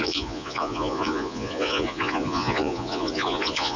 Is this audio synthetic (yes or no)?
yes